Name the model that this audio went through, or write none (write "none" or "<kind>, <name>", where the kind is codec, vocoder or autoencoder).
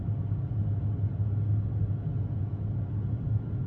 none